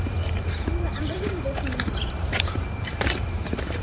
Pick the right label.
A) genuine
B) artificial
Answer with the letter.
B